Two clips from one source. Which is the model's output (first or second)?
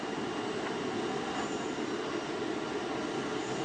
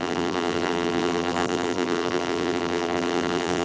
second